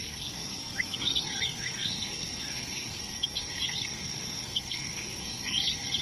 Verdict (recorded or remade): remade